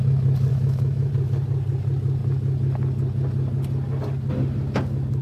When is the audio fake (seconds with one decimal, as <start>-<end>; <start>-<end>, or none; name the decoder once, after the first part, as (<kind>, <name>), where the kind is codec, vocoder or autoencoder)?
0.5-1.1 (autoencoder, DAC-VAE)